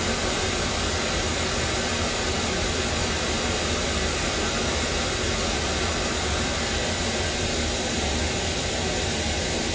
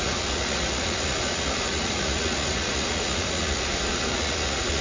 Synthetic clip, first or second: second